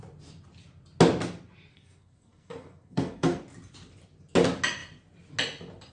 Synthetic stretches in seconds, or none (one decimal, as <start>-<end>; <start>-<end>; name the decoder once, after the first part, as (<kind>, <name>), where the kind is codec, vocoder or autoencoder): 1.7-3.4 (codec, SNAC)